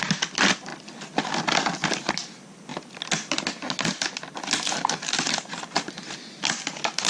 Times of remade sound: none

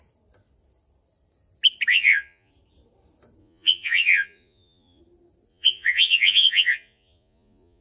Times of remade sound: 1.9-2.5 (vocoder, Vocos); 3.4-5.0; 5.5-7.8

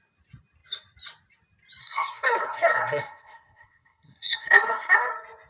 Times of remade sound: 1.8-5.1 (codec, SNAC)

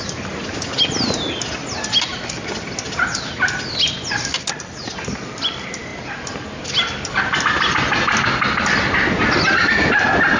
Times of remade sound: none

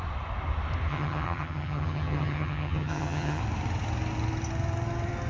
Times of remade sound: 0.9-3.4 (vocoder, HiFi-GAN)

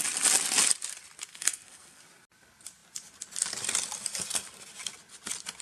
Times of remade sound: 1.3-2.0 (codec, SNAC)

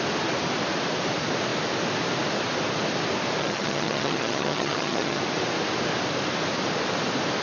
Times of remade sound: 3.4-5.2 (vocoder, HiFi-GAN)

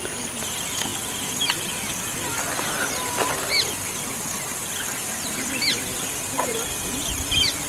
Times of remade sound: none